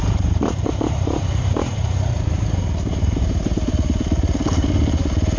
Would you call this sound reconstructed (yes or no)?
yes